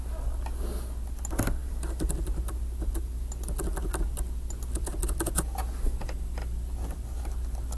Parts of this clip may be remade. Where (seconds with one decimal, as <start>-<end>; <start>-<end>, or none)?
none